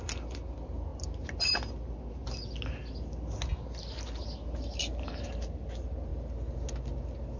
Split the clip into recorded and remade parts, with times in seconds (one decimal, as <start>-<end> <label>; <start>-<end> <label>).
0.0-7.4 recorded